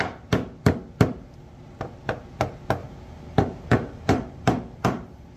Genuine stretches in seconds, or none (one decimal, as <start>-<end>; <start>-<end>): 0.0-2.8

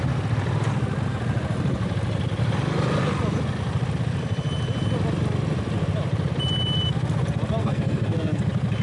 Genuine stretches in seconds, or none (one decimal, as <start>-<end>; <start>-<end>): 0.0-7.6; 8.4-8.8

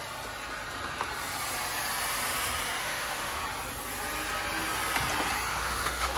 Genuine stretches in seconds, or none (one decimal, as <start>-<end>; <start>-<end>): 0.0-2.8; 3.4-5.5

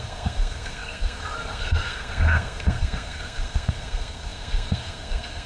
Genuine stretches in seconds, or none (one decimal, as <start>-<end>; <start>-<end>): none

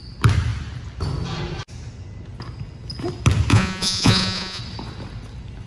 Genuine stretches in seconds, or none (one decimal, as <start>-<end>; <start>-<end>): 0.0-3.5; 4.6-5.7

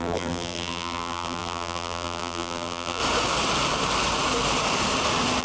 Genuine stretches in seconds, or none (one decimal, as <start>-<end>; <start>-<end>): 3.0-5.4

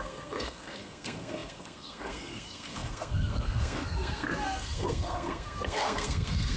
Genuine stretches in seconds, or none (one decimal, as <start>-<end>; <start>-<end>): none